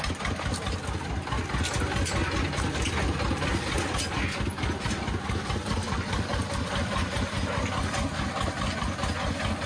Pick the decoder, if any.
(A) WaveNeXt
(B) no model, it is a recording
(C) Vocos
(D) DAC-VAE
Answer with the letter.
B